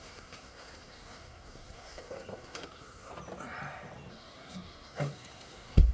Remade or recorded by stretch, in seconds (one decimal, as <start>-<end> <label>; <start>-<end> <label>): 0.0-3.1 remade; 3.1-4.1 recorded; 4.1-5.9 remade